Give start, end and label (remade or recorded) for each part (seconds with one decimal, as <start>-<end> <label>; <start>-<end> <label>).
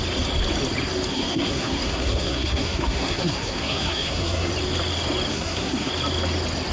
0.0-1.1 recorded; 1.1-4.5 remade; 4.5-5.3 recorded; 5.3-5.9 remade; 5.9-6.7 recorded